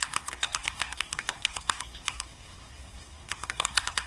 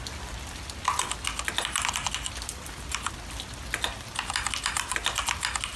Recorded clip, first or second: second